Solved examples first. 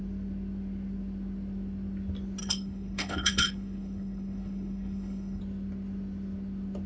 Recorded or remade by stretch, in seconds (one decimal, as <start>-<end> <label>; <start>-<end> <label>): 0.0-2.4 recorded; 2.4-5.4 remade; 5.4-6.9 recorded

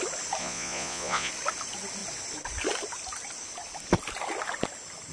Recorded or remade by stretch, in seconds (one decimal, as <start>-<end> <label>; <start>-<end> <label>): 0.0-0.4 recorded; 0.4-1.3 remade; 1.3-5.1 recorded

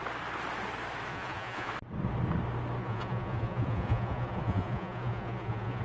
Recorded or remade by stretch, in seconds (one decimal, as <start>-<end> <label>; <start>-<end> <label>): 0.0-1.1 recorded; 1.1-1.7 remade; 1.7-2.8 recorded; 2.8-5.8 remade

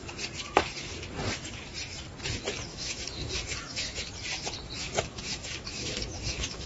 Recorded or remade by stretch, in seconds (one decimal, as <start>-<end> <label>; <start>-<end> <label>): 0.0-2.7 recorded; 2.7-4.1 remade; 4.1-4.8 recorded; 4.8-6.7 remade